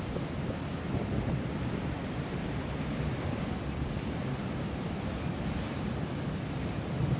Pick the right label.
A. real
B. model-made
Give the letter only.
A